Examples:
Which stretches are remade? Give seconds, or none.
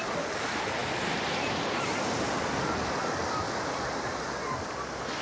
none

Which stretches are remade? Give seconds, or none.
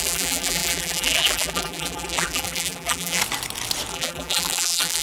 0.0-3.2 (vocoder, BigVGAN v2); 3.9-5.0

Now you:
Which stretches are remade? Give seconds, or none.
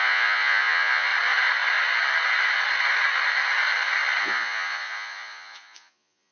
0.0-1.1 (vocoder, Vocos); 4.2-6.3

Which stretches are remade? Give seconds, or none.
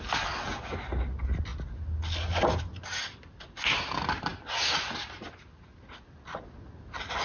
none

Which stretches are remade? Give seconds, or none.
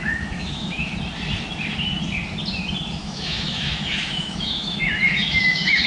0.0-0.9 (autoencoder, DAC-VAE); 2.9-5.9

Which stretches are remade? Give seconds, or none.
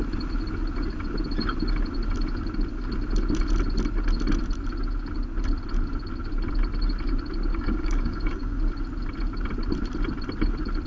7.5-8.6 (codec, DAC)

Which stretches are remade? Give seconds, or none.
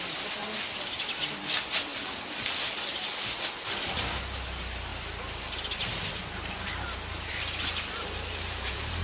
none